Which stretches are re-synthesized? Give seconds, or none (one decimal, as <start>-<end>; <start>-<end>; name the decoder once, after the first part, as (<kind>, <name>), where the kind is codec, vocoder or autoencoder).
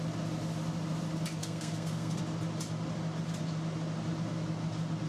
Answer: 1.4-2.2 (codec, SNAC)